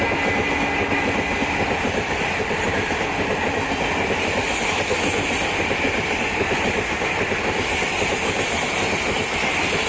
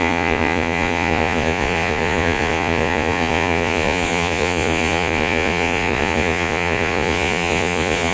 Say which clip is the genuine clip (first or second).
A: first